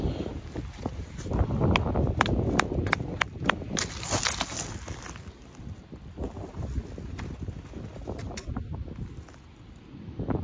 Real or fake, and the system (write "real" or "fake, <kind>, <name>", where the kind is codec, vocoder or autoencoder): real